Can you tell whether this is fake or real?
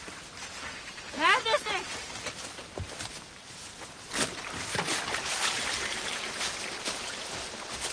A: real